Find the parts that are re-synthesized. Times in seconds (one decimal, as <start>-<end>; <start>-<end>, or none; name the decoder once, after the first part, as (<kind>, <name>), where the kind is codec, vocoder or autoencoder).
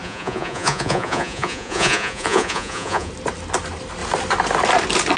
0.0-3.1 (vocoder, Vocos)